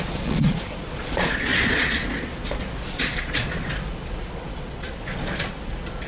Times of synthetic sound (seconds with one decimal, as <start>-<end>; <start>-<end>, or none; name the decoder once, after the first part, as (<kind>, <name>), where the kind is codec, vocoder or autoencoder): 0.0-6.1 (vocoder, Vocos)